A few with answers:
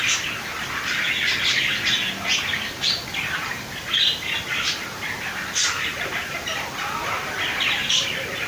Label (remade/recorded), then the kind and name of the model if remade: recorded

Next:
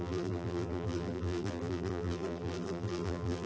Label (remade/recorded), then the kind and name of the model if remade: remade, vocoder, BigVGAN v2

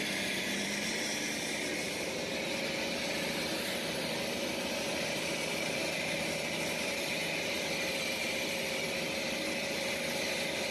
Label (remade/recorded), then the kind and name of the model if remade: remade, vocoder, BigVGAN v2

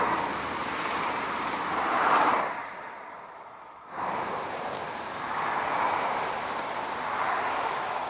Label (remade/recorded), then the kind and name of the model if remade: remade, vocoder, BigVGAN v2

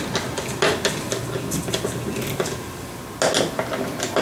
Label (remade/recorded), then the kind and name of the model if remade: recorded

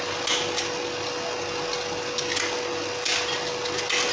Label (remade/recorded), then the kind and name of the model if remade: recorded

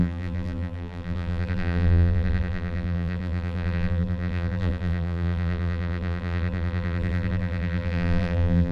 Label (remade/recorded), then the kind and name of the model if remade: remade, vocoder, BigVGAN v2